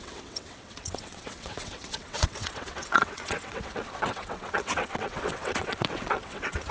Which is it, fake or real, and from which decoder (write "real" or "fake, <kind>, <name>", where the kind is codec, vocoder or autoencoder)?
fake, vocoder, WaveNeXt